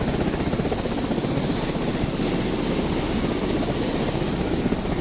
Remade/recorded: recorded